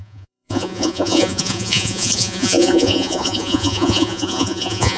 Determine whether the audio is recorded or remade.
remade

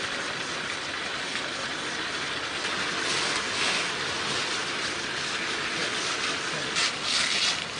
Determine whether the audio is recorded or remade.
recorded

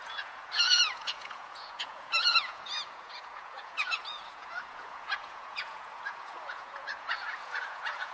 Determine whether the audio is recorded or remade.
remade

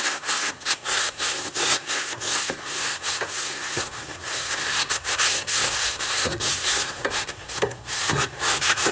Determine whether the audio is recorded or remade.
remade